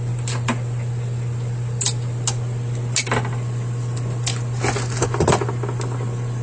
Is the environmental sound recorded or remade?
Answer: recorded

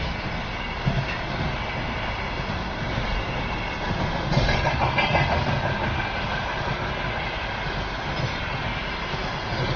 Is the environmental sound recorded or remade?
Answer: recorded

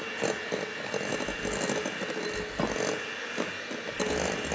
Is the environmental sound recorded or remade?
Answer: recorded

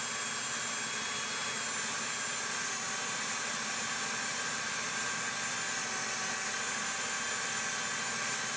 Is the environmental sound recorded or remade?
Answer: recorded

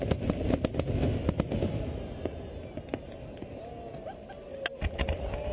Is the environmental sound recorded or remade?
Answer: recorded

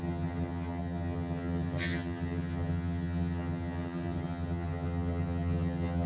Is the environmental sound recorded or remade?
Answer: remade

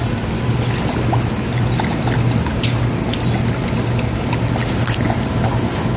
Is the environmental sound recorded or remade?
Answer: recorded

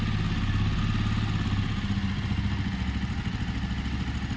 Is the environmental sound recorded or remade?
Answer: recorded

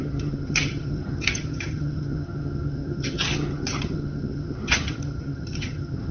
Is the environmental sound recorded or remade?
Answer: remade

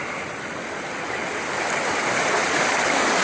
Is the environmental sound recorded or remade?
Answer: recorded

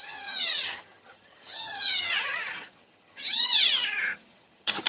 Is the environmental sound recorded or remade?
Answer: remade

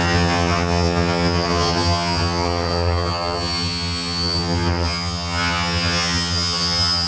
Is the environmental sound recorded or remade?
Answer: remade